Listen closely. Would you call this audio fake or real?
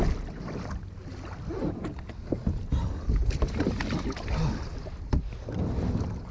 real